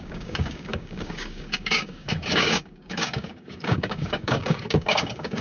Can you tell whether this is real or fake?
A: fake